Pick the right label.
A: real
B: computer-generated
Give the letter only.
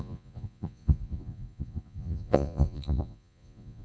B